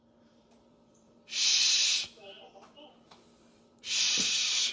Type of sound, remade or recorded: remade